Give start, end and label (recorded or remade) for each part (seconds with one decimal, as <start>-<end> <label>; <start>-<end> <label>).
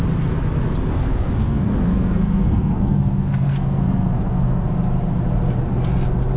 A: 0.0-0.9 recorded; 0.9-4.7 remade; 4.7-6.4 recorded